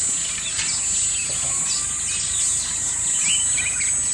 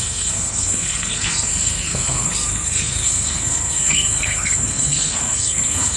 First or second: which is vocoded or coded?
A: second